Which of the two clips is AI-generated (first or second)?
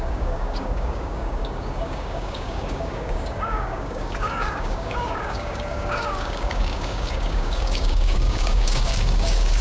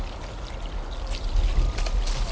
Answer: first